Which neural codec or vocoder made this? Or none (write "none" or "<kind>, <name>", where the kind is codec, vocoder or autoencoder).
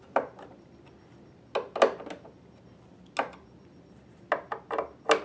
none